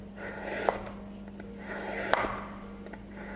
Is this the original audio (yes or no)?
yes